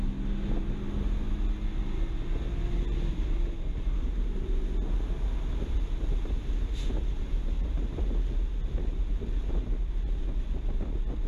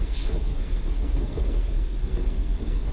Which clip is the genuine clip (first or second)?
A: first